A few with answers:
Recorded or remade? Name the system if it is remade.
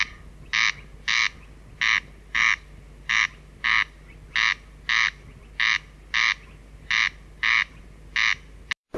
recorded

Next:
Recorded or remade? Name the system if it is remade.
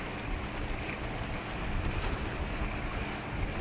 recorded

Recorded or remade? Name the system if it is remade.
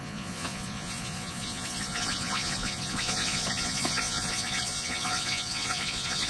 remade, vocoder, Vocos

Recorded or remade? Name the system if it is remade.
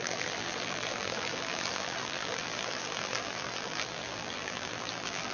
remade, vocoder, BigVGAN v2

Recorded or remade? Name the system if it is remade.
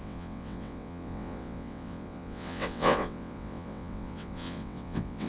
remade, vocoder, WaveNeXt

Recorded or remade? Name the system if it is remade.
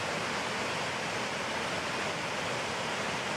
recorded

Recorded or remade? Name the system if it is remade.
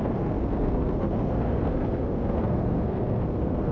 remade, codec, SNAC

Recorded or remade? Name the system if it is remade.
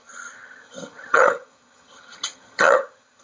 remade, vocoder, HiFi-GAN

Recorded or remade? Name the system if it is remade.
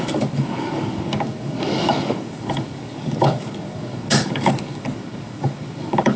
remade, codec, DAC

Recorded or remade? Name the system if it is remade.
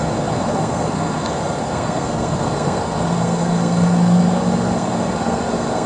remade, codec, SNAC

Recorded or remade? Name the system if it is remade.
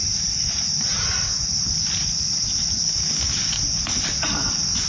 recorded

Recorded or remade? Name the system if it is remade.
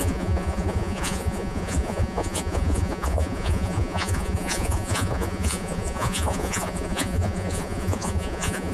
remade, vocoder, Vocos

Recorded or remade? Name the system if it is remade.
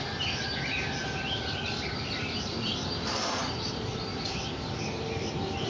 recorded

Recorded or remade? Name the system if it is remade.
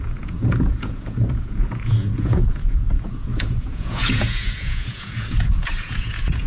remade, vocoder, Vocos